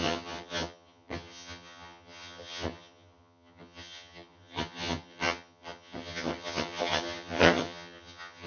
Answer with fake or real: fake